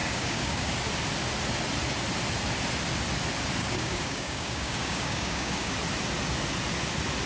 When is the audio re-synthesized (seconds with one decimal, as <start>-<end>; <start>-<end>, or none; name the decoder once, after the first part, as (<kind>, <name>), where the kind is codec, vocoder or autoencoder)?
0.0-0.7 (codec, DAC); 3.6-5.7